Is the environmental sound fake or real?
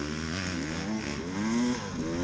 real